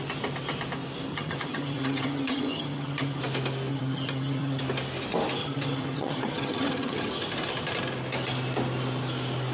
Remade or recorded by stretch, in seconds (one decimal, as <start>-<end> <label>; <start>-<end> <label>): 0.0-1.1 recorded; 1.1-3.2 remade; 3.2-3.7 recorded; 3.7-4.6 remade; 4.6-5.4 recorded; 5.4-7.1 remade; 7.1-9.5 recorded